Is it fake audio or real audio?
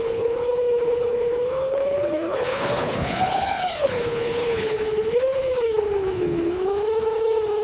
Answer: fake